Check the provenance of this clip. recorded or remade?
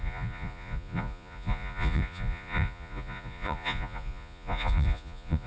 remade